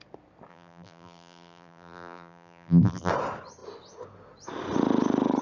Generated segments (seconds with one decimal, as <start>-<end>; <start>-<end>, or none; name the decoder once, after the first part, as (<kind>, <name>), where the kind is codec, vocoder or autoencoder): 0.5-3.1 (vocoder, BigVGAN v2)